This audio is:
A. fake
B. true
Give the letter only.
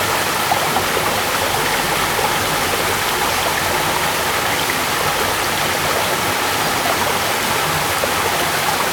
B